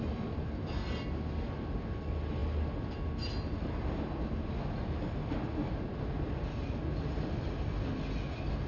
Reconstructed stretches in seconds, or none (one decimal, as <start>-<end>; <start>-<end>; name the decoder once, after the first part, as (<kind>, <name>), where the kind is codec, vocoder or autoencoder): none